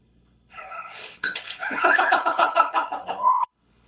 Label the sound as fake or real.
fake